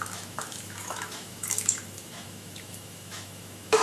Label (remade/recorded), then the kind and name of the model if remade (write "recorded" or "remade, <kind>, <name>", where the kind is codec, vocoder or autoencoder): remade, autoencoder, DAC-VAE